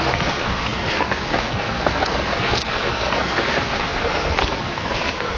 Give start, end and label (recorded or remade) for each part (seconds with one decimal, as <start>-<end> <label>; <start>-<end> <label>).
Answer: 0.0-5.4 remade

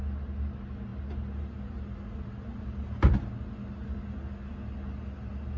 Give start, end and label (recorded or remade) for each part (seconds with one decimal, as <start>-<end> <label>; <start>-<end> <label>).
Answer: 0.0-5.6 recorded

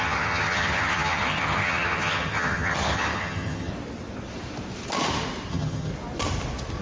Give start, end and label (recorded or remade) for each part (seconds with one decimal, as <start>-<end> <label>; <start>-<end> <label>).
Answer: 0.0-3.7 remade; 3.7-5.5 recorded; 5.5-5.9 remade; 5.9-6.8 recorded

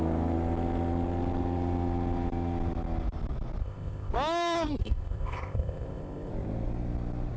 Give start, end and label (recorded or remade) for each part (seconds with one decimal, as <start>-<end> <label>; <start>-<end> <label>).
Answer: 0.0-3.6 recorded; 3.6-4.1 remade; 4.1-4.8 recorded; 4.8-6.3 remade; 6.3-7.4 recorded

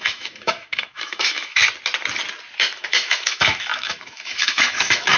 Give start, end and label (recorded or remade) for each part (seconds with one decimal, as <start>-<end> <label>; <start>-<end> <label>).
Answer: 0.0-1.6 remade; 1.6-2.7 recorded; 2.7-5.2 remade